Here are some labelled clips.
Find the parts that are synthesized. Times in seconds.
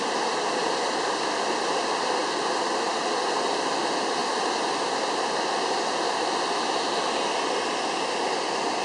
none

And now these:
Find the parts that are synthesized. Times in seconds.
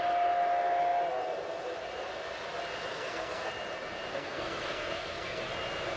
2.9-3.5 (codec, SNAC); 4.1-5.4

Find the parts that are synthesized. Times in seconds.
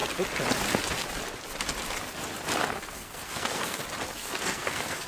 2.6-3.8 (codec, SNAC); 4.2-5.1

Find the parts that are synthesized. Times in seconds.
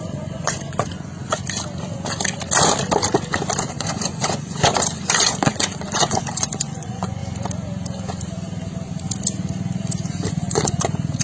0.0-1.4 (vocoder, Vocos); 3.7-7.2; 10.3-11.2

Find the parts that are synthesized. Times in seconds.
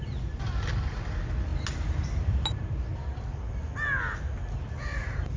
none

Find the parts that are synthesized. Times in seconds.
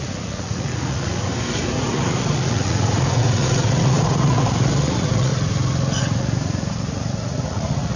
0.0-1.3 (vocoder, Vocos); 1.9-5.3; 6.0-8.0